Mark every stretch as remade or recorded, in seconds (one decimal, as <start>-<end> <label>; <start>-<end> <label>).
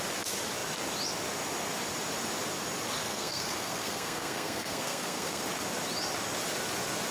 0.0-3.0 recorded; 3.0-5.4 remade; 5.4-7.1 recorded